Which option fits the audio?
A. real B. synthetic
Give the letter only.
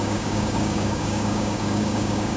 B